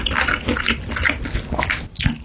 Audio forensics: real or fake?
real